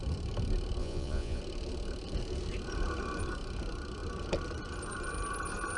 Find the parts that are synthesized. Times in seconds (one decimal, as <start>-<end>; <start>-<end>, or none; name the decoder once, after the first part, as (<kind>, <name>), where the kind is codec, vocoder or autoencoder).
0.8-1.4 (vocoder, Vocos)